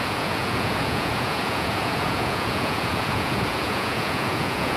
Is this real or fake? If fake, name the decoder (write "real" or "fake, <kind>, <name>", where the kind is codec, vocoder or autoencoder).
fake, vocoder, Vocos